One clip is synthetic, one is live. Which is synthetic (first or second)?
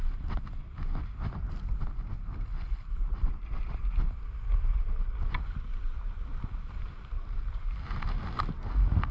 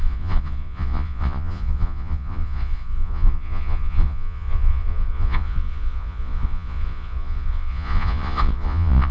second